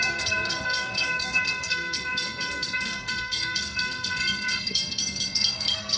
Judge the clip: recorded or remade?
remade